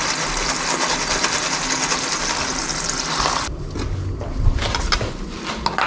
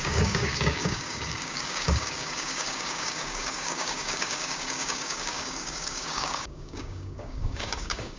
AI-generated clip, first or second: second